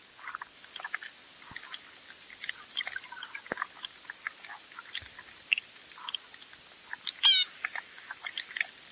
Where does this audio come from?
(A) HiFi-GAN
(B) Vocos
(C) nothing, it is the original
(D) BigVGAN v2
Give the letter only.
C